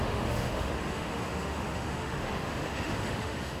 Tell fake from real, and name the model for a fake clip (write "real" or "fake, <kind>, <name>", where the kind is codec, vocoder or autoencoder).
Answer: fake, autoencoder, DAC-VAE